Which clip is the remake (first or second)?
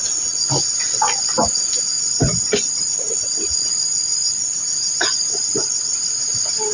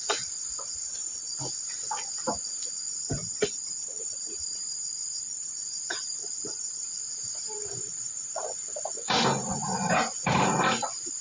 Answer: second